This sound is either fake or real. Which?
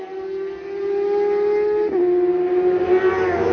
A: real